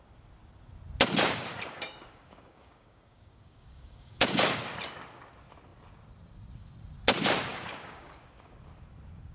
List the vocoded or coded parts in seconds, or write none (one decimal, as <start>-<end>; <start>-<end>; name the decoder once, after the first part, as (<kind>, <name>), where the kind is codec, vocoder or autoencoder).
1.5-4.6 (codec, DAC); 7.5-8.5